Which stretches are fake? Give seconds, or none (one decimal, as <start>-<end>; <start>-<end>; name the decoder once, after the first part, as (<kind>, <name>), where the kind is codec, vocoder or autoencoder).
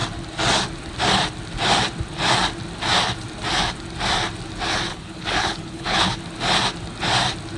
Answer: 4.9-6.2 (codec, HILCodec)